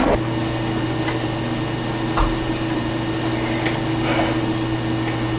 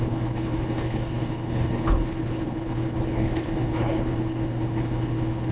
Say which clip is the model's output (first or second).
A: second